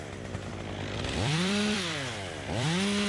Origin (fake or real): fake